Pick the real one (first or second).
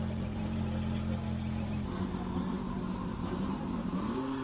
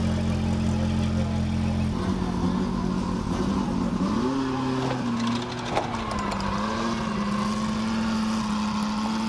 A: second